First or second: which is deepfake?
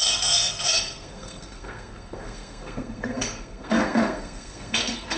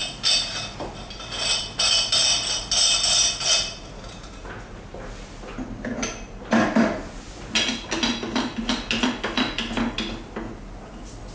first